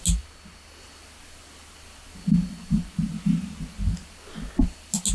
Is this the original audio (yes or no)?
yes